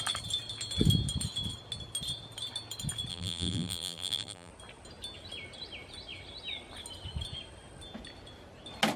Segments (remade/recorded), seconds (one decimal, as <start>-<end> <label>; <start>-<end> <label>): 0.0-3.1 recorded; 3.1-4.5 remade; 4.5-9.0 recorded